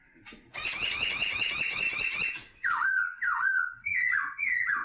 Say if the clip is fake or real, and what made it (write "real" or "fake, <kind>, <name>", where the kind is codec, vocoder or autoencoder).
fake, vocoder, Vocos